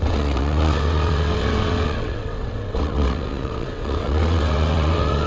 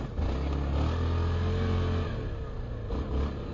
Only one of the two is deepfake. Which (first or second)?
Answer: first